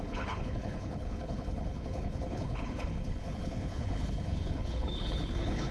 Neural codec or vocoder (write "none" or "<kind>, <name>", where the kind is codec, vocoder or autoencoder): codec, HILCodec